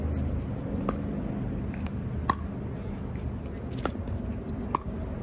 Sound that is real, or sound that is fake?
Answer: real